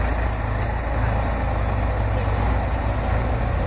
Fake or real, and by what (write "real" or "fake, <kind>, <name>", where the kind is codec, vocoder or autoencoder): real